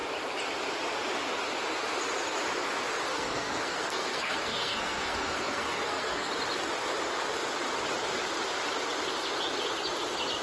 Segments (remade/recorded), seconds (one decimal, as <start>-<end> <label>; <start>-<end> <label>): 0.0-3.1 recorded; 3.1-6.3 remade; 6.3-10.4 recorded